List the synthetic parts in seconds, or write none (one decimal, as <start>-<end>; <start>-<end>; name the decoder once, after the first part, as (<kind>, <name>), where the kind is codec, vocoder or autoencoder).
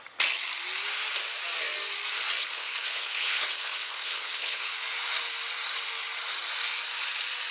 2.4-4.7 (codec, HILCodec)